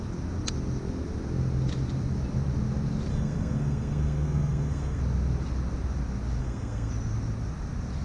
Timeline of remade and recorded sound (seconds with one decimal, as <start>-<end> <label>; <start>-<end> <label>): 0.0-3.1 recorded; 3.1-5.0 remade; 5.0-6.4 recorded; 6.4-6.9 remade; 6.9-8.0 recorded